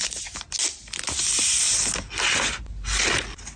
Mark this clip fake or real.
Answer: real